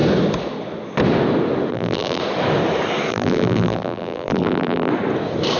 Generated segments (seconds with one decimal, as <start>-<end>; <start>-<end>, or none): 1.7-2.2; 3.1-4.9